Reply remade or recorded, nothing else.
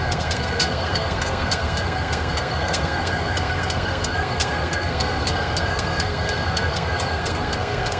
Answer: remade